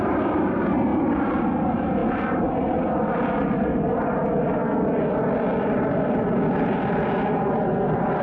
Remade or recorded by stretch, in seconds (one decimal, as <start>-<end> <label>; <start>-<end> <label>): 0.0-5.5 recorded; 5.5-7.0 remade; 7.0-8.2 recorded